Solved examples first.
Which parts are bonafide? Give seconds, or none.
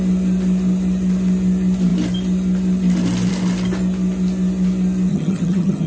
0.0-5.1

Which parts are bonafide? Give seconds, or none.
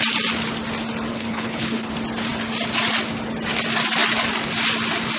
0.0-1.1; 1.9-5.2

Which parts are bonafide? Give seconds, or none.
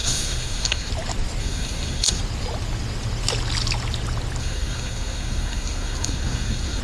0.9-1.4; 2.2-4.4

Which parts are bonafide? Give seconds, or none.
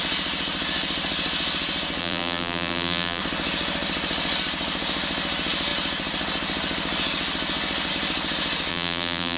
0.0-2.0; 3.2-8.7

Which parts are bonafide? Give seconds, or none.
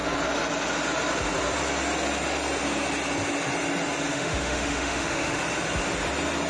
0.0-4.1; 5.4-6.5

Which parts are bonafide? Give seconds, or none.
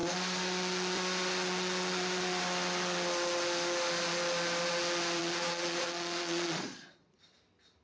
0.0-5.2; 7.2-7.8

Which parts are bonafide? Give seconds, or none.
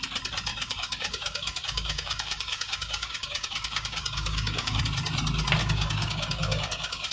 0.0-0.5; 4.8-5.6